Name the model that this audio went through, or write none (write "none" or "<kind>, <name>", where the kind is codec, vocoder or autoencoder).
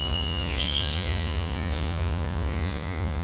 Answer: vocoder, Vocos